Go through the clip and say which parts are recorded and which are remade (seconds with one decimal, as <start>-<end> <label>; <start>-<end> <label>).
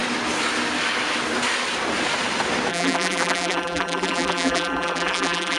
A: 0.0-2.7 recorded; 2.7-5.6 remade